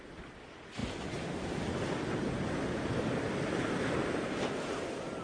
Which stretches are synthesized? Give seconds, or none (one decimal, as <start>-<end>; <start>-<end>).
0.0-0.8; 3.9-5.2